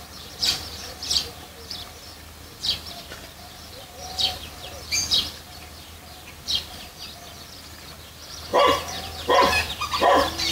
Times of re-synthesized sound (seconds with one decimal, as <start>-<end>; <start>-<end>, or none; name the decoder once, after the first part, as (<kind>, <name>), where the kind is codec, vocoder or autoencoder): 0.0-8.5 (vocoder, BigVGAN v2); 9.7-10.5